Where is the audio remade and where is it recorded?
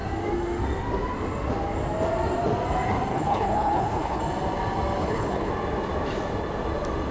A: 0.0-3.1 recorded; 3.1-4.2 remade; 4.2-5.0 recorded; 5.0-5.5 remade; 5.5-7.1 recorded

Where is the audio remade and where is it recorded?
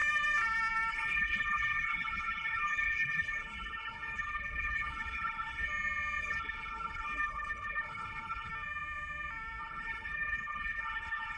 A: 0.0-0.9 recorded; 0.9-5.7 remade; 5.7-6.2 recorded; 6.2-8.5 remade; 8.5-9.6 recorded; 9.6-11.4 remade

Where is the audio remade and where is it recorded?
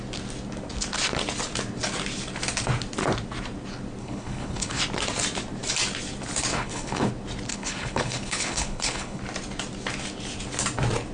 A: 0.0-4.0 recorded; 4.0-4.8 remade; 4.8-6.5 recorded; 6.5-7.1 remade; 7.1-7.5 recorded; 7.5-9.2 remade; 9.2-11.1 recorded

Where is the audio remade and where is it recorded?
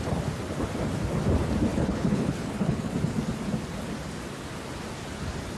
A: 0.0-1.7 recorded; 1.7-2.9 remade; 2.9-5.6 recorded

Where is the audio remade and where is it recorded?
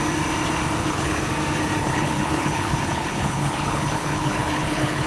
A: 0.0-0.8 recorded; 0.8-1.3 remade; 1.3-1.8 recorded; 1.8-5.1 remade